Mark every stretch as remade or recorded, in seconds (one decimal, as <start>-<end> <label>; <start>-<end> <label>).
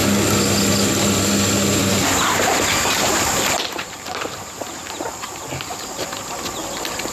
0.0-1.8 recorded; 1.8-6.1 remade; 6.1-7.1 recorded